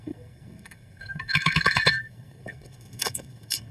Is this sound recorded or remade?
remade